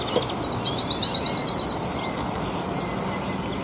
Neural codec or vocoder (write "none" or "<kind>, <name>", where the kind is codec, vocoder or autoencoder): none